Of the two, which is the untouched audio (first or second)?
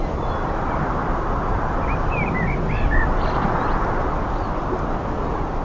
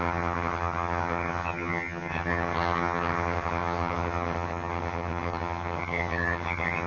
first